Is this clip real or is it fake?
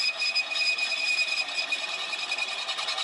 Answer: real